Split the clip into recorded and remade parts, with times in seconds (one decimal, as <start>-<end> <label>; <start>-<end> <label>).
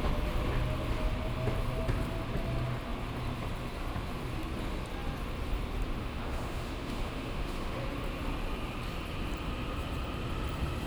0.0-6.0 recorded; 6.0-7.8 remade; 7.8-10.9 recorded